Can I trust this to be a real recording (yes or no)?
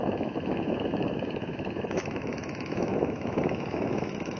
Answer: no